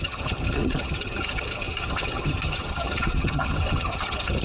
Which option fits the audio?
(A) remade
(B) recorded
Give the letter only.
A